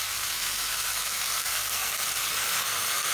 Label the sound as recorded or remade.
remade